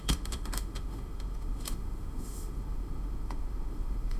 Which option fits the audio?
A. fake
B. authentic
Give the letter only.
A